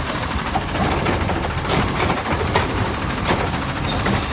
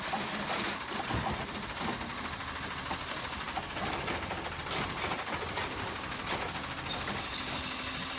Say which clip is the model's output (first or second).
first